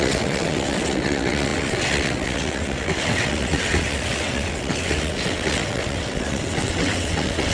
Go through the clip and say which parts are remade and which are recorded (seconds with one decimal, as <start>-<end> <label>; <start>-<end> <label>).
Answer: 0.0-7.5 remade